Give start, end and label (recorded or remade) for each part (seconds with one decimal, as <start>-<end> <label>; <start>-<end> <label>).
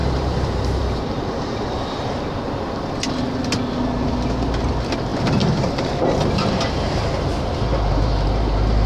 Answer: 0.0-2.9 remade; 2.9-5.1 recorded; 5.1-7.4 remade; 7.4-8.9 recorded